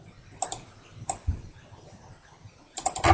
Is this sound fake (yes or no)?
no